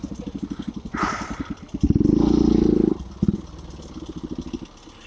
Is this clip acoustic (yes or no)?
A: yes